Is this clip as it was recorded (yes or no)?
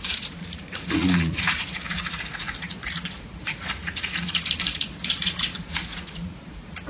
no